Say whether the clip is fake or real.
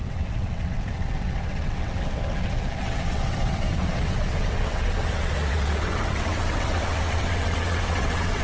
fake